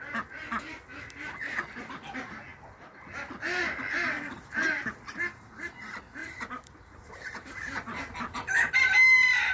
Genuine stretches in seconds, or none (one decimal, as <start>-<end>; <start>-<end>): 0.0-6.2; 8.7-9.5